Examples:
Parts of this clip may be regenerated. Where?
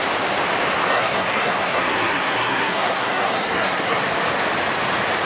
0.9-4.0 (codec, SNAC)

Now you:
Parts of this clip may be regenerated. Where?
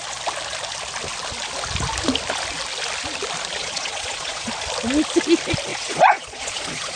3.6-4.5 (vocoder, Vocos); 5.7-7.0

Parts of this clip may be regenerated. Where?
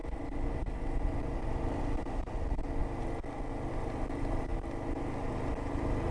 none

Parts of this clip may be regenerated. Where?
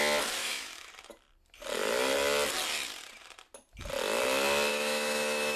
0.4-0.9 (autoencoder, DAC-VAE); 4.7-5.6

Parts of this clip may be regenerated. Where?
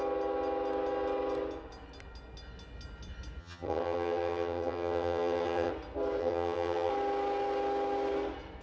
3.4-5.7 (vocoder, HiFi-GAN); 6.2-6.9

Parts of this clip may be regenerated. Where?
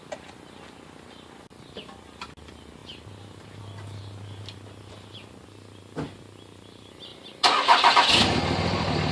7.1-8.4 (vocoder, BigVGAN v2)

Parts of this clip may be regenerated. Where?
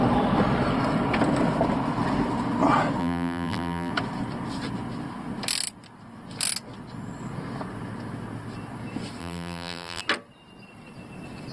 3.0-3.9 (vocoder, BigVGAN v2); 9.2-10.0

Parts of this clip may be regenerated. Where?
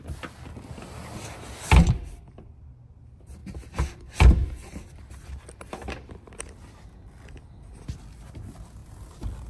3.4-6.4 (vocoder, BigVGAN v2)